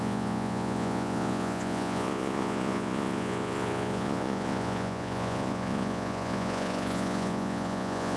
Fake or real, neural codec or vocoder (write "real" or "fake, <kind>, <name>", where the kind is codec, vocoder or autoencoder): fake, vocoder, Vocos